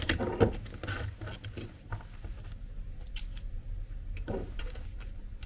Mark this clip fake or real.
real